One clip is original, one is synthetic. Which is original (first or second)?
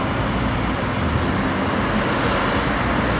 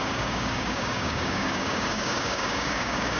first